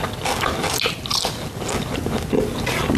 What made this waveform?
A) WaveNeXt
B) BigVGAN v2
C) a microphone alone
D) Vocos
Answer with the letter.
C